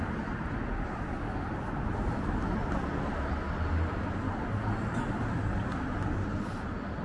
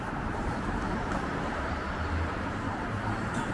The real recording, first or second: first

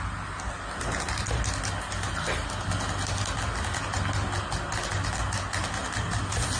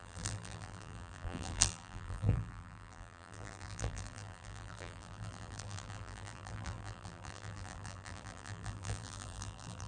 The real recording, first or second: first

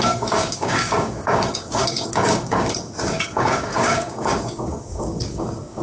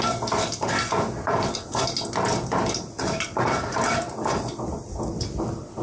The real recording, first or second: second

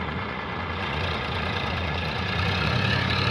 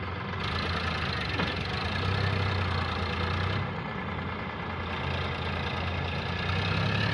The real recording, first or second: second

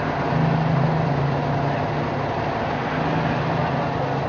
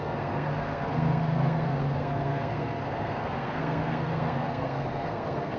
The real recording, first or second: first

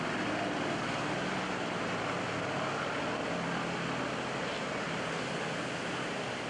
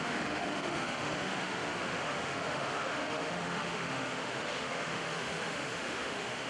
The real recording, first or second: first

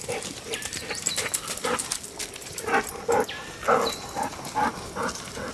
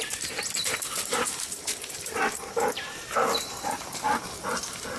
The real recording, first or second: first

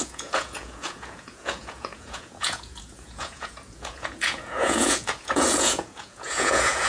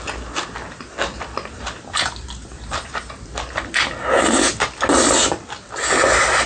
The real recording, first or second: second